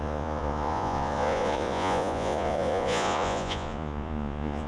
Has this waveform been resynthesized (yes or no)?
yes